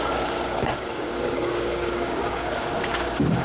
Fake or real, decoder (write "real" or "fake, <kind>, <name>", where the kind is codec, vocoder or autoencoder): fake, codec, DAC